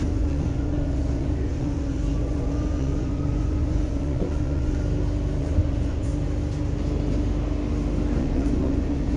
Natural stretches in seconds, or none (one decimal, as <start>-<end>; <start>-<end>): 4.8-5.4; 6.1-8.2